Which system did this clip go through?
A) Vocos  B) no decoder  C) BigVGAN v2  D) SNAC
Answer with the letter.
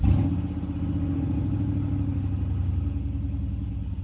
B